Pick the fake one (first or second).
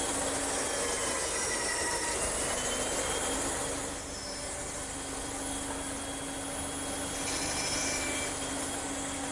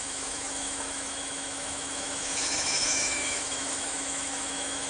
second